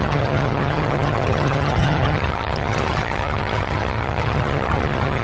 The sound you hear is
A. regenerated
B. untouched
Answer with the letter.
A